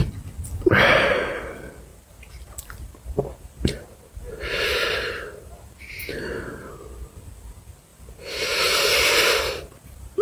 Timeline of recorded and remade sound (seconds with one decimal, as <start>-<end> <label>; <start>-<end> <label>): 0.0-1.9 recorded; 1.9-6.7 remade; 6.7-7.9 recorded; 7.9-10.2 remade